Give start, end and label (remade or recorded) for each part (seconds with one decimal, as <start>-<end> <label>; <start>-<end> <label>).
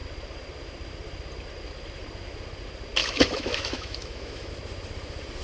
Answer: 0.0-3.0 recorded; 3.0-4.5 remade; 4.5-5.4 recorded